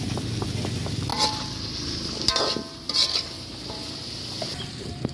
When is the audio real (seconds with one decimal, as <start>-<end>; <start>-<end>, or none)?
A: 1.1-2.9